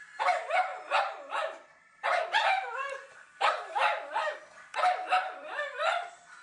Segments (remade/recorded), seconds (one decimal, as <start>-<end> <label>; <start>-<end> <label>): 0.0-6.4 remade